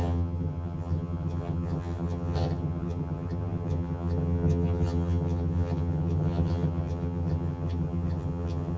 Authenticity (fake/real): fake